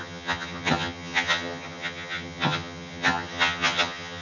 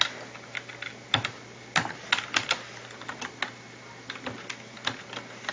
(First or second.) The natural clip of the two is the second